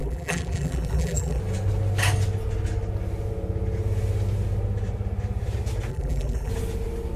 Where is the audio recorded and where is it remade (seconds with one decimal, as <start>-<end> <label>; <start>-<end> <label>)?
0.0-1.4 remade; 1.4-5.9 recorded; 5.9-6.5 remade; 6.5-7.2 recorded